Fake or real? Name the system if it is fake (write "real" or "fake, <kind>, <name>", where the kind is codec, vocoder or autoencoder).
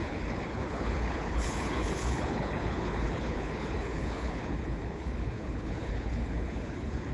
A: fake, codec, HILCodec